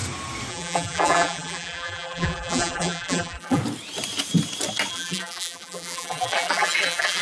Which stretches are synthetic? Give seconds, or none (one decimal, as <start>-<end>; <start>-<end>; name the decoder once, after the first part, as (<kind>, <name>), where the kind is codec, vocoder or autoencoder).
0.5-3.6 (vocoder, BigVGAN v2); 4.9-7.2